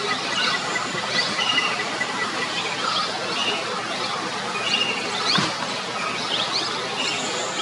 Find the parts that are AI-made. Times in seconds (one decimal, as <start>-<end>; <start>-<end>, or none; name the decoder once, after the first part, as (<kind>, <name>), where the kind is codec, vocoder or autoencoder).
0.7-2.7 (vocoder, BigVGAN v2)